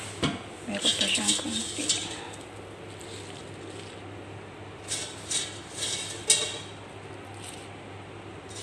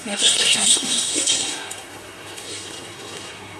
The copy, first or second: second